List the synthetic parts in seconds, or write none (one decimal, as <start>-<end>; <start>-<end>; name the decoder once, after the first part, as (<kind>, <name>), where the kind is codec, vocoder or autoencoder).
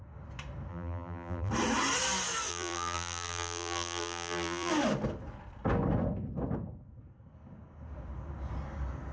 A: 0.7-1.5 (vocoder, BigVGAN v2); 2.5-4.7